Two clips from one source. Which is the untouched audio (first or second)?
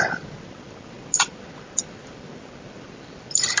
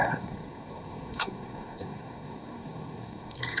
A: first